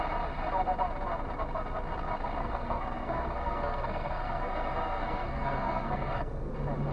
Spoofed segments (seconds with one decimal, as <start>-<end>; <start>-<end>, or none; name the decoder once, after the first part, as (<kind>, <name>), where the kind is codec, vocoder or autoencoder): 2.4-6.5 (codec, SNAC)